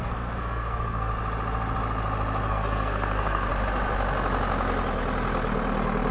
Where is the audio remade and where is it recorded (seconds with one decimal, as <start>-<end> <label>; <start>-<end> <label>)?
0.0-1.1 remade; 1.1-2.5 recorded; 2.5-3.5 remade; 3.5-6.1 recorded